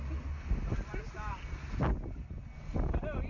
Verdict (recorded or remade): recorded